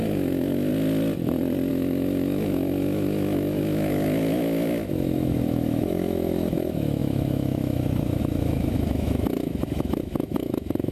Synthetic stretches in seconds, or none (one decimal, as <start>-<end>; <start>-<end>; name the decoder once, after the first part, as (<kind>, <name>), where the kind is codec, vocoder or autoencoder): 0.0-0.7 (autoencoder, DAC-VAE); 1.7-10.9